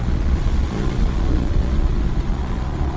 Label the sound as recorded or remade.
remade